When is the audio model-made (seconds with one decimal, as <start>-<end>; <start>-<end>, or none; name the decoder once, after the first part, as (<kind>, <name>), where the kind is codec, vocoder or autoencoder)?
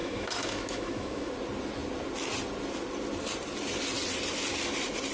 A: 0.0-1.3 (autoencoder, DAC-VAE)